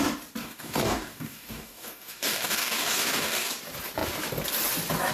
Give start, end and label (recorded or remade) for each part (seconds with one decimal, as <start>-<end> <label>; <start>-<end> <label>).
0.0-0.4 recorded; 0.4-3.5 remade; 3.5-5.1 recorded